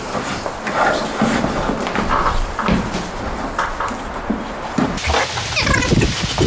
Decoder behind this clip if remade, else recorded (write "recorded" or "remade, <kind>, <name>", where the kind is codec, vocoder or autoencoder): recorded